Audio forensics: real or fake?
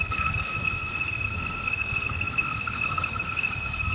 fake